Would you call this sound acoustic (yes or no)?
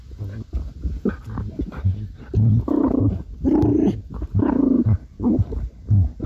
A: yes